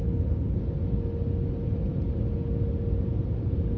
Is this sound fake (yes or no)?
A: no